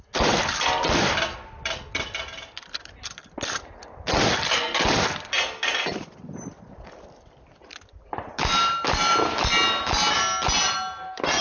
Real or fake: real